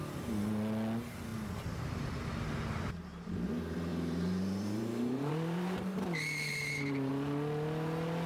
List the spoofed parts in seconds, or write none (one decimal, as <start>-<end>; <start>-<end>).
3.9-7.1